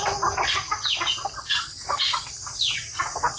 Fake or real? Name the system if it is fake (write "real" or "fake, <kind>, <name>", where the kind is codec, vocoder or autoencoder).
real